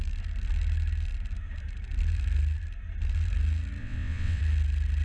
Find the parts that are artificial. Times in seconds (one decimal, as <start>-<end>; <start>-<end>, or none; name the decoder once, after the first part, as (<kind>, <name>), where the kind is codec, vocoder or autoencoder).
3.8-4.4 (vocoder, WaveNeXt)